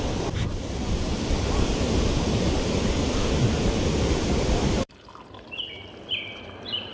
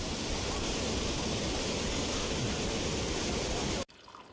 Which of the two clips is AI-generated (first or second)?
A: first